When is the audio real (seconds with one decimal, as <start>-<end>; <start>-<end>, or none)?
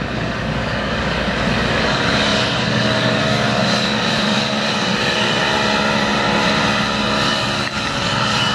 5.4-7.3